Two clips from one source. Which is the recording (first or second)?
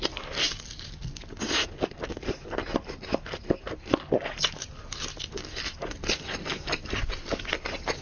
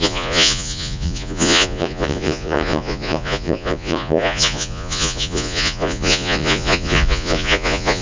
first